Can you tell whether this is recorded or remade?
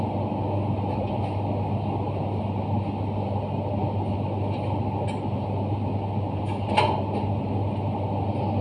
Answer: recorded